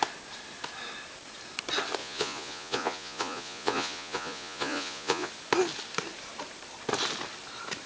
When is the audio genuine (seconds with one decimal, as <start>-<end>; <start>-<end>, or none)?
0.0-2.0; 5.3-7.9